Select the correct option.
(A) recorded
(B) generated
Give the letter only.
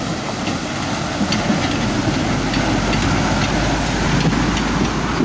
A